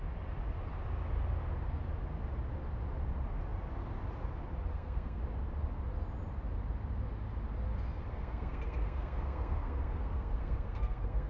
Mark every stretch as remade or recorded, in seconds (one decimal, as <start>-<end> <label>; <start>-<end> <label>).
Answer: 0.0-4.7 recorded; 4.7-5.2 remade; 5.2-7.9 recorded; 7.9-11.3 remade